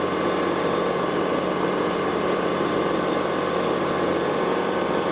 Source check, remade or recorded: recorded